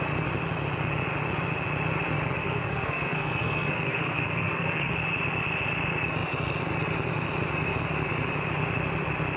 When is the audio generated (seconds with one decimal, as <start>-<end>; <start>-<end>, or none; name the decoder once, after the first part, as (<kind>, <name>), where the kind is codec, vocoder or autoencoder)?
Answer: 2.4-4.9 (codec, SNAC)